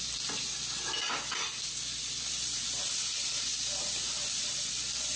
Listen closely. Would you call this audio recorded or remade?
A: recorded